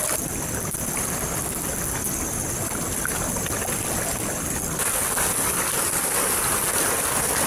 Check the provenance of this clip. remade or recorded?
recorded